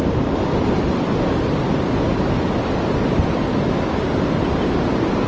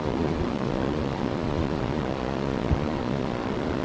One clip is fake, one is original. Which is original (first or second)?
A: first